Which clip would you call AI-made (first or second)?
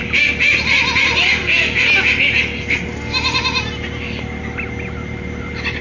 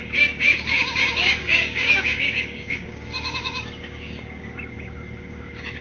second